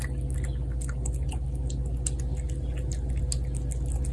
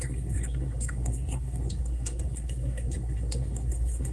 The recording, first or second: first